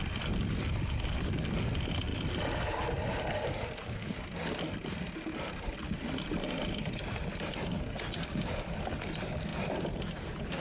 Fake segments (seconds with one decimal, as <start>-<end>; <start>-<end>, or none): none